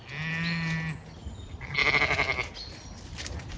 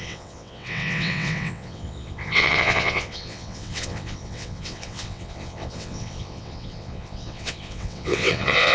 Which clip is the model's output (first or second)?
second